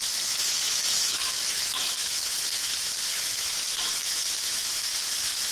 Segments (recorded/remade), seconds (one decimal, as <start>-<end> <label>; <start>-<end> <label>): 0.0-5.5 remade